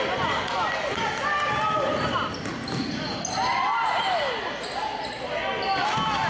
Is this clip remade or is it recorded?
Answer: recorded